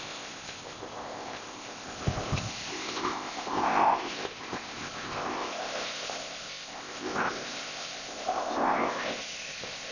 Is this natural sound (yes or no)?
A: no